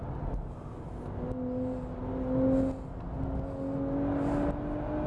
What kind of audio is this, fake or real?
real